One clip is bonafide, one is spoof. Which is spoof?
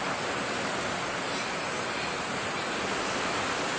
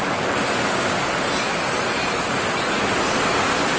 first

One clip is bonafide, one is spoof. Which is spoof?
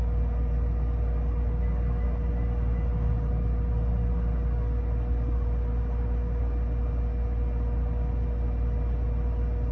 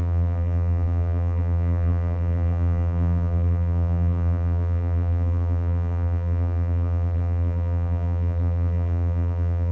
second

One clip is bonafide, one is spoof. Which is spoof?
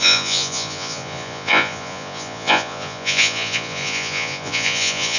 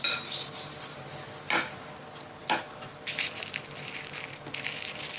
first